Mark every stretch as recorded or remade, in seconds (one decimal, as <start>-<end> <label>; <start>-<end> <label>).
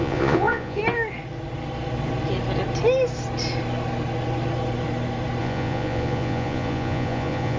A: 0.0-0.8 remade; 0.8-5.4 recorded; 5.4-7.6 remade